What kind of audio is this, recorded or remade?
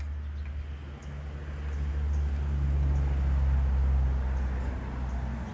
recorded